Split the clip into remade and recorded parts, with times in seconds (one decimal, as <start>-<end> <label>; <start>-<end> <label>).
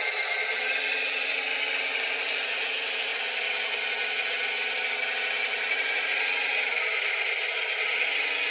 0.0-8.5 recorded